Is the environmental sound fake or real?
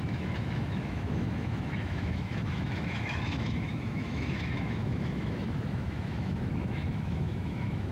fake